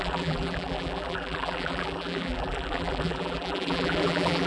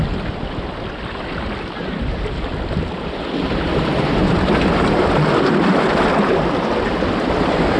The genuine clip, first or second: second